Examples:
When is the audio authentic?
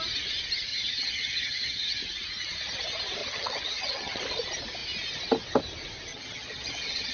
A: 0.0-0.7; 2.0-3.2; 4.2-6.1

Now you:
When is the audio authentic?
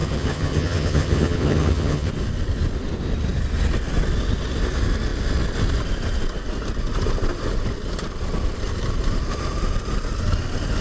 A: 2.1-10.8